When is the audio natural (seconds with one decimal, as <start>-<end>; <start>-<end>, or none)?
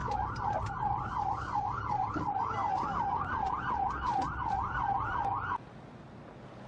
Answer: 0.0-0.6; 2.6-6.7